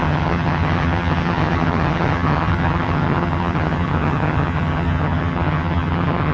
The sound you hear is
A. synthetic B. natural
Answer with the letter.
A